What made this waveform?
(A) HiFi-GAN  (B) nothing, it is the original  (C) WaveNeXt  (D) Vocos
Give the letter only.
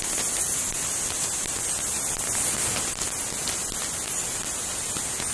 B